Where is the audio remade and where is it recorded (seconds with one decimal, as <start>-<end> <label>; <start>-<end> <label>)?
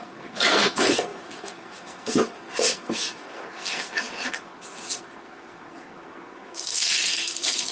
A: 0.0-7.7 remade